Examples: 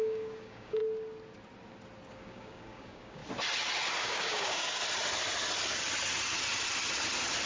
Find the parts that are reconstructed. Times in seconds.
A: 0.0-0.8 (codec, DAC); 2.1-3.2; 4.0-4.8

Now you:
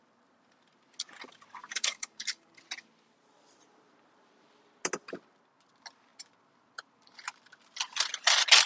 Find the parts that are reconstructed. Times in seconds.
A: 1.6-2.5 (codec, DAC)

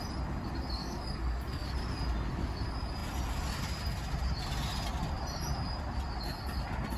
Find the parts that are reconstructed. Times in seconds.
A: 0.8-1.7 (codec, DAC)

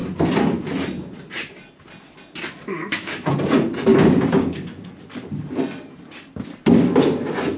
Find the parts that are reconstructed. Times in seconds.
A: 2.7-3.3 (codec, DAC); 3.9-4.9

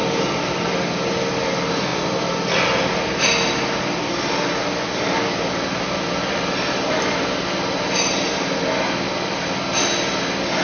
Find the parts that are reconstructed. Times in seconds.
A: none

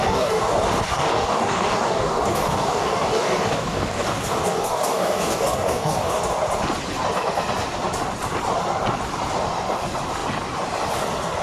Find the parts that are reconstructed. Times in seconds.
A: 0.0-0.5 (codec, DAC); 0.9-6.2

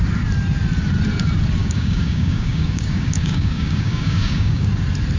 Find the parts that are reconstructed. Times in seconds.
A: 1.6-4.7 (codec, DAC)

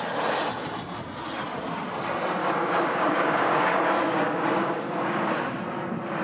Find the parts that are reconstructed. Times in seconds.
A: 2.4-5.6 (codec, DAC)